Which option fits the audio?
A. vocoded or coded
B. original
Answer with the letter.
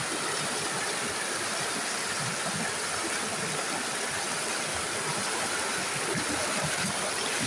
B